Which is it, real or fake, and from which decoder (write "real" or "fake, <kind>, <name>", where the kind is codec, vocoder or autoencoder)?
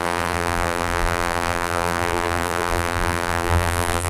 fake, vocoder, BigVGAN v2